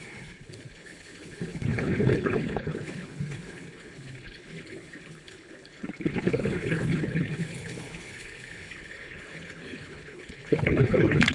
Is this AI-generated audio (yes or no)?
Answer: yes